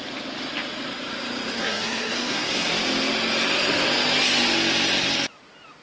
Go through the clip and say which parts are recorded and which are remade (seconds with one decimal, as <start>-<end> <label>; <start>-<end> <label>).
0.0-1.6 recorded; 1.6-2.7 remade; 2.7-5.8 recorded